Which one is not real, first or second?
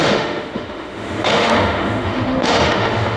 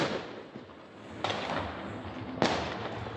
first